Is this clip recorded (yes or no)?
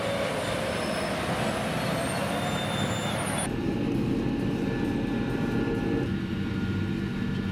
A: yes